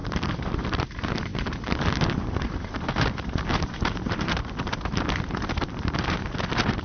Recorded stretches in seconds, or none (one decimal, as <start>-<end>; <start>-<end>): none